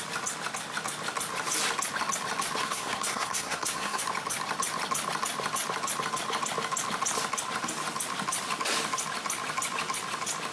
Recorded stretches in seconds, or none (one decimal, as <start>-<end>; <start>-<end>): 0.0-2.6; 4.0-10.5